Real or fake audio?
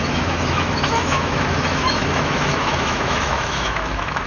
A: fake